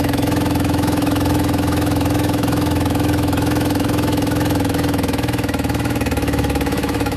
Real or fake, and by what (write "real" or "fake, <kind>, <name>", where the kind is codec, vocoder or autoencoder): fake, autoencoder, DAC-VAE